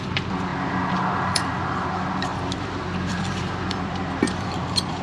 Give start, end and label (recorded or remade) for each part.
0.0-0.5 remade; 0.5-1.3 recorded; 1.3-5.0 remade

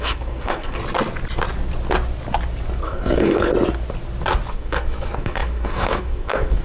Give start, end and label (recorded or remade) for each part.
0.0-0.8 remade; 0.8-2.8 recorded; 2.8-3.5 remade; 3.5-4.5 recorded; 4.5-6.6 remade

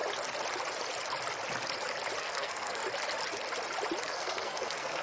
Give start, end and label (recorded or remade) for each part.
0.0-2.2 recorded; 2.2-2.8 remade; 2.8-4.0 recorded; 4.0-5.0 remade

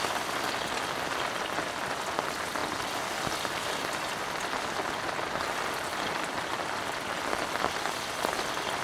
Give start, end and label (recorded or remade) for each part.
0.0-5.9 recorded; 5.9-6.8 remade; 6.8-8.8 recorded

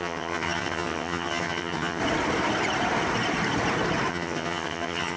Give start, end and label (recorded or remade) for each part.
0.0-2.0 remade; 2.0-4.1 recorded; 4.1-5.2 remade